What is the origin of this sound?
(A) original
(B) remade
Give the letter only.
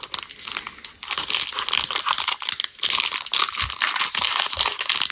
A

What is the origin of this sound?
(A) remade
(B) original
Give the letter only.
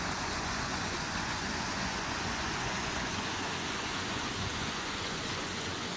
A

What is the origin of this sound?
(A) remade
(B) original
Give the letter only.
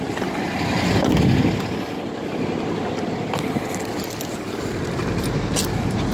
B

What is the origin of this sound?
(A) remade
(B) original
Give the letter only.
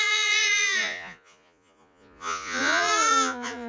A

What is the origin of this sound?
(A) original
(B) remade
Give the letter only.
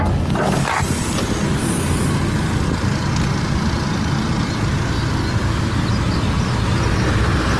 A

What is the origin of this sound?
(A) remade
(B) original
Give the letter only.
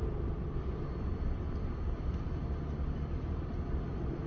B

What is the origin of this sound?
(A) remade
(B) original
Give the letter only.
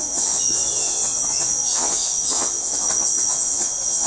A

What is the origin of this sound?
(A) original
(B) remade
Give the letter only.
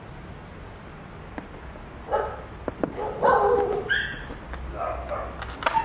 A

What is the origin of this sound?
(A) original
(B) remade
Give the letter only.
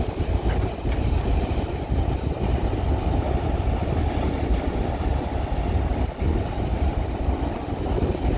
A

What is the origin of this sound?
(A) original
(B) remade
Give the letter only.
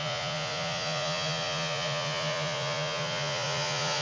B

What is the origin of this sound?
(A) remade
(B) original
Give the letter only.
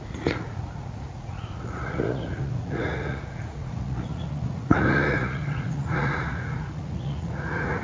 A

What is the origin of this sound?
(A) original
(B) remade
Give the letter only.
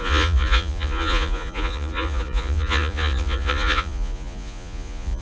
B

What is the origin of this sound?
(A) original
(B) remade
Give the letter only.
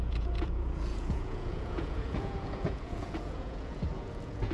B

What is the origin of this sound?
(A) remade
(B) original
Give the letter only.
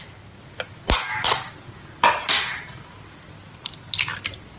B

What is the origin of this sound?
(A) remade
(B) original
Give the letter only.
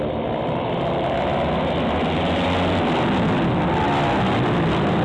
B